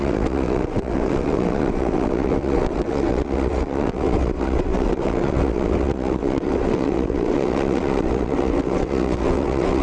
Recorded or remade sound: remade